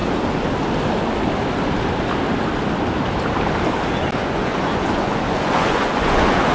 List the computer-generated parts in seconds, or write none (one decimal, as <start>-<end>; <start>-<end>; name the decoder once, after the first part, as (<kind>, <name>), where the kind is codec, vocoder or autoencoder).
4.2-6.5 (vocoder, Vocos)